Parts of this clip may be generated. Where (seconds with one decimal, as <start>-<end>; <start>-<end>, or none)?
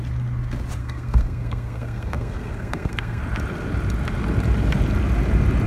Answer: 0.8-3.2